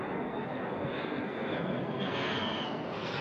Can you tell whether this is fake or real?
fake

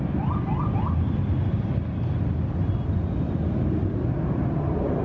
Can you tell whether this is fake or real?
real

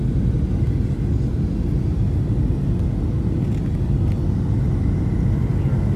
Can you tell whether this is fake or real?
real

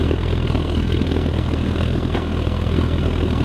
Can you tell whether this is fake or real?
fake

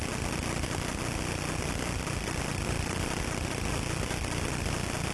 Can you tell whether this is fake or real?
real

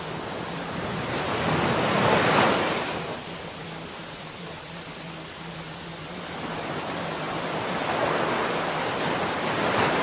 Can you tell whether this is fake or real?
real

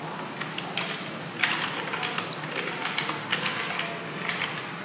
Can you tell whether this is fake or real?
real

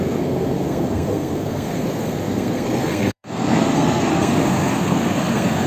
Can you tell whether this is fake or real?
fake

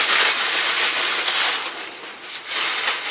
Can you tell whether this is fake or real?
real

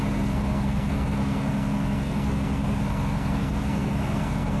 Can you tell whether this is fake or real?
fake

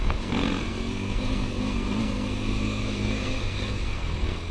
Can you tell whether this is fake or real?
fake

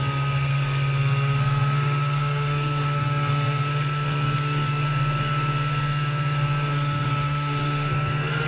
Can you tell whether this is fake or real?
fake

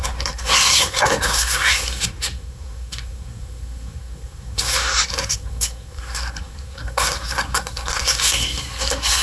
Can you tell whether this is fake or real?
fake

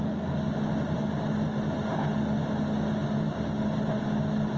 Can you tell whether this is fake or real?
real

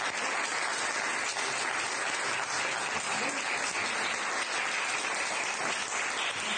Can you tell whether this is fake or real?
real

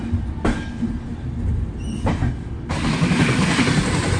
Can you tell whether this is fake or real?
real